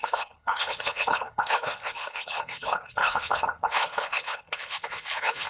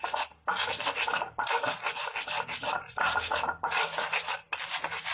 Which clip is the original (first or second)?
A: second